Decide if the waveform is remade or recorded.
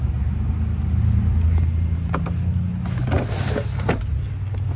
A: recorded